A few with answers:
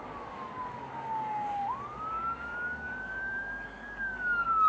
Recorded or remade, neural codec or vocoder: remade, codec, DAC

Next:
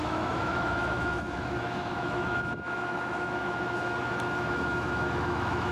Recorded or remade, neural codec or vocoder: remade, autoencoder, DAC-VAE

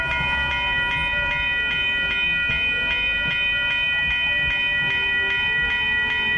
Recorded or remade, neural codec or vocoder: recorded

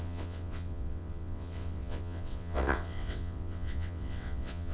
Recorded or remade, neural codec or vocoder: remade, vocoder, WaveNeXt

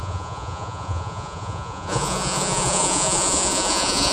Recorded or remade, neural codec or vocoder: remade, vocoder, Vocos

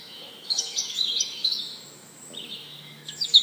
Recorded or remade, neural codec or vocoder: remade, autoencoder, DAC-VAE